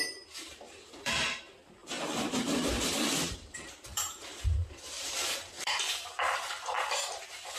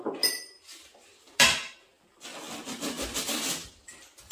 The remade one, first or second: first